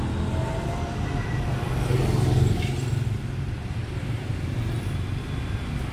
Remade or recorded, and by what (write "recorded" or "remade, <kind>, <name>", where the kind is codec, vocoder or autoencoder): recorded